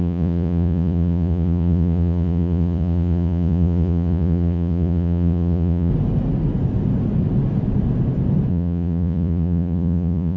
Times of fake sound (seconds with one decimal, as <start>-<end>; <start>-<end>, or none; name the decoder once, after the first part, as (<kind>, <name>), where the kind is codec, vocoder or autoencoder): 0.0-5.9 (vocoder, Vocos); 8.5-10.4